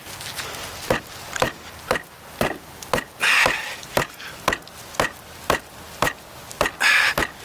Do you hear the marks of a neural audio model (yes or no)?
no